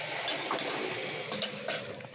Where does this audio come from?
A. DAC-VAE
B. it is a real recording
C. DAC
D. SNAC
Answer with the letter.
B